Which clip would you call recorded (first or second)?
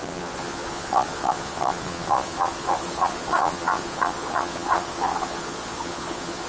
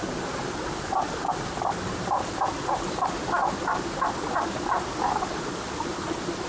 second